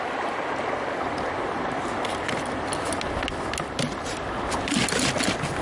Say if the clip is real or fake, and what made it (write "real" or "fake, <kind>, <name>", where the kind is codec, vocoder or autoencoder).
real